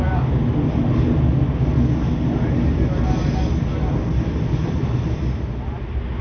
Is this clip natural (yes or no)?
yes